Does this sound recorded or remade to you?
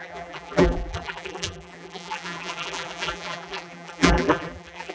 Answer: remade